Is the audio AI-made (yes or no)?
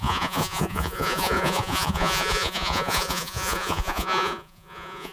yes